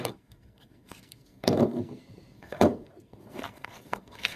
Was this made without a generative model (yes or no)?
no